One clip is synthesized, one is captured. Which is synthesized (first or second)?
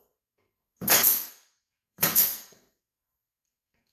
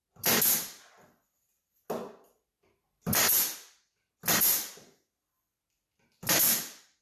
first